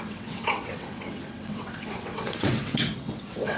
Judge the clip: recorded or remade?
remade